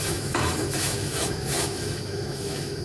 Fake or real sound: fake